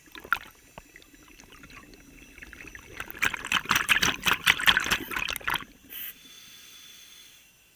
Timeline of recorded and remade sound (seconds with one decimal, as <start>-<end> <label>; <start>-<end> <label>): 0.0-5.5 recorded; 5.5-6.3 remade; 6.3-7.8 recorded